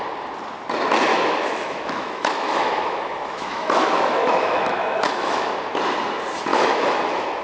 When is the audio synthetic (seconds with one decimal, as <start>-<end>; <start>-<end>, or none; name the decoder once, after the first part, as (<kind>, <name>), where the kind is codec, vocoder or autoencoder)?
1.1-5.5 (autoencoder, DAC-VAE); 6.5-7.4